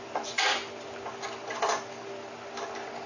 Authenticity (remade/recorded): recorded